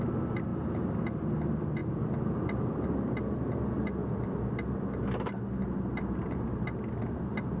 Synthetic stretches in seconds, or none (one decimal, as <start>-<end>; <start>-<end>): 1.8-2.9